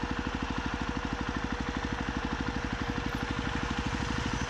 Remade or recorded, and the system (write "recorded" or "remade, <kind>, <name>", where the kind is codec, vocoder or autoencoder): recorded